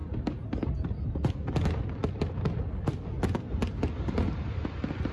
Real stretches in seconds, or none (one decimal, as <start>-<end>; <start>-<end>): 0.0-5.1